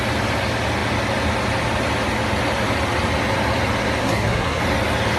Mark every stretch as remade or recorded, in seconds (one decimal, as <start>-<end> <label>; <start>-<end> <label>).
0.0-4.0 recorded; 4.0-4.6 remade; 4.6-5.2 recorded